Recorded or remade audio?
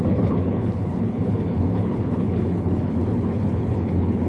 remade